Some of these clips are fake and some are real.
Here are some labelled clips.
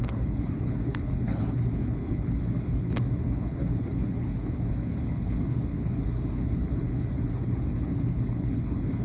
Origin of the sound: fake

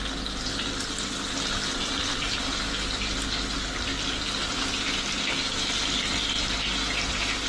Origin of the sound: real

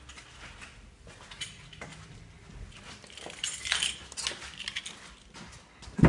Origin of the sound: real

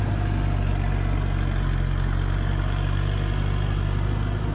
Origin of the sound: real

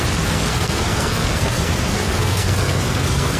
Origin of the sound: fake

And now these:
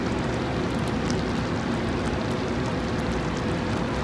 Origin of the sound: fake